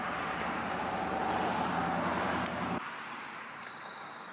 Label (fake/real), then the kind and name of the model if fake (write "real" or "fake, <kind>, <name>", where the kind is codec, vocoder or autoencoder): fake, vocoder, BigVGAN v2